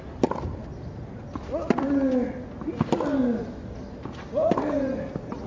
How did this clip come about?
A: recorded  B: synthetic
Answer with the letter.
A